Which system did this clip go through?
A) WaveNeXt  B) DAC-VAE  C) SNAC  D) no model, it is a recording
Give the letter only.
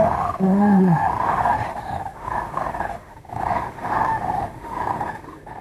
B